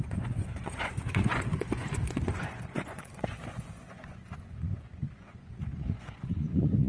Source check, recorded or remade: remade